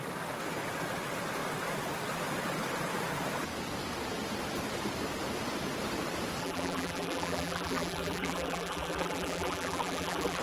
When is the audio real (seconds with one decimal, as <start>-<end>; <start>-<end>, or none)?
0.0-6.4

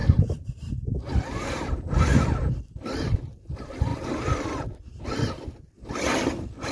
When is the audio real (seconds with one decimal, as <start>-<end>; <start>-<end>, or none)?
2.6-3.9; 5.0-6.7

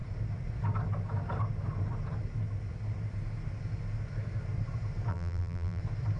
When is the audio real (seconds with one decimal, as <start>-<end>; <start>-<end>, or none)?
0.0-5.1; 5.8-6.2

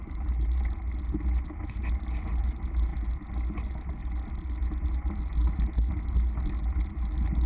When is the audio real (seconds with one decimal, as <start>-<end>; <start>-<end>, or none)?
0.7-7.5

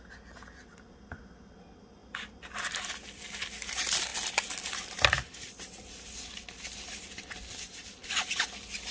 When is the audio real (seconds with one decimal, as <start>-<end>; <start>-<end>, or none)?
0.0-2.0; 2.5-4.1